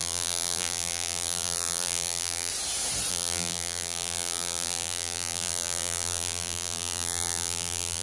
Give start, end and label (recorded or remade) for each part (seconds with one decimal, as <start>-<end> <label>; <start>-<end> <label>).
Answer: 0.0-2.5 remade; 2.5-3.1 recorded; 3.1-8.0 remade